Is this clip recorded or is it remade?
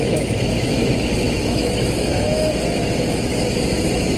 remade